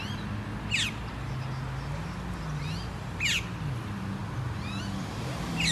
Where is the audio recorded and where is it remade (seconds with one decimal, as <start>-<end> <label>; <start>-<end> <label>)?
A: 0.0-5.7 recorded